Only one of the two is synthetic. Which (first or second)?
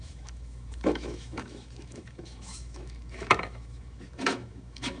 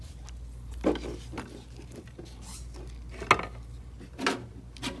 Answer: first